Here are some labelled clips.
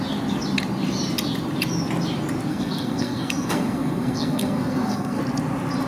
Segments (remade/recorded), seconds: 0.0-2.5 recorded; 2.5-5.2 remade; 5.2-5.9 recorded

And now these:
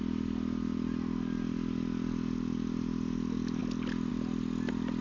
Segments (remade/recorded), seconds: 0.0-5.0 recorded

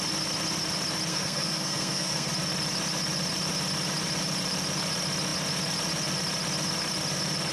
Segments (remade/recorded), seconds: 0.0-1.1 recorded; 1.1-2.3 remade; 2.3-7.5 recorded